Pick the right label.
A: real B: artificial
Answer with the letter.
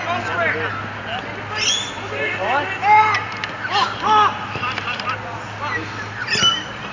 A